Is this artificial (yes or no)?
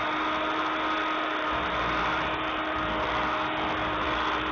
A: no